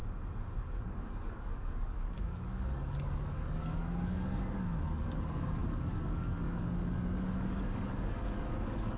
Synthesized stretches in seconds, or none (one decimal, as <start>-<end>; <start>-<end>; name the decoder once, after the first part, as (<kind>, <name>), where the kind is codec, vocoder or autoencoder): 0.6-9.0 (codec, DAC)